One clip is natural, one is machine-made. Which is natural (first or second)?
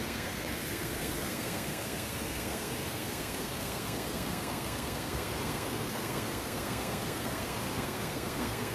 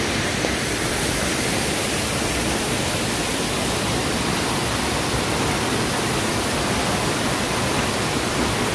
second